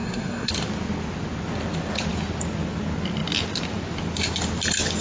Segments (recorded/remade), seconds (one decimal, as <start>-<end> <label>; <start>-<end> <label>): 0.0-0.5 remade; 0.5-5.0 recorded